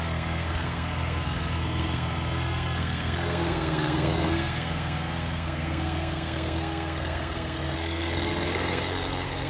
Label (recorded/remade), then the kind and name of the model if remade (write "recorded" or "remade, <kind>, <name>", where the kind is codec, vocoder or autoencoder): remade, codec, SNAC